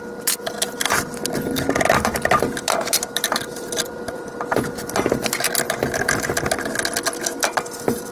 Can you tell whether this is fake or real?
real